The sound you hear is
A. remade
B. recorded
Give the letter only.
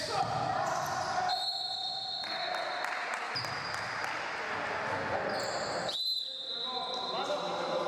B